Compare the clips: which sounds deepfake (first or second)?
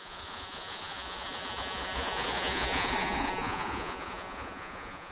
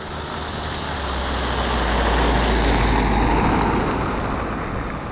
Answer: first